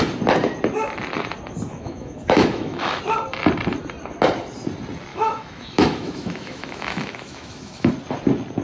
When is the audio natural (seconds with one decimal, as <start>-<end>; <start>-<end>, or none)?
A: 0.0-1.7; 3.0-5.1; 7.9-8.6